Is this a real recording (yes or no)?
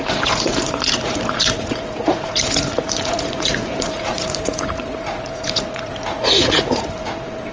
no